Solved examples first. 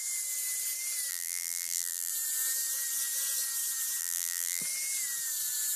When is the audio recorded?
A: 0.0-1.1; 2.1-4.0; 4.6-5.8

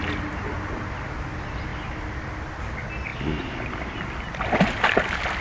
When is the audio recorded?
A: 0.0-5.4

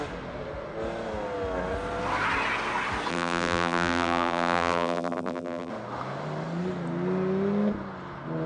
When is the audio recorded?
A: 0.0-3.1; 5.7-8.5

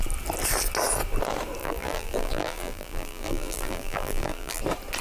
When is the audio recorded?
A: 0.0-1.6; 4.6-5.0

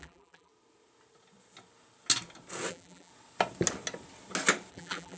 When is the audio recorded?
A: 0.5-2.7; 3.1-4.7

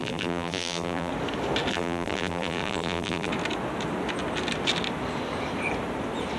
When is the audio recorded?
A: 1.1-1.7; 3.3-6.4